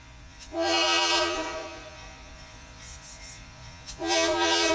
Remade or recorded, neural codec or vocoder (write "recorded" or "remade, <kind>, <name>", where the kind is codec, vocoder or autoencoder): remade, vocoder, Vocos